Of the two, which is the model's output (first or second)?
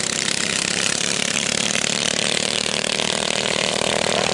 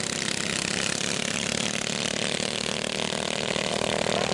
first